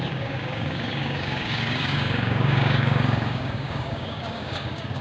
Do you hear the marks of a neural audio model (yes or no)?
yes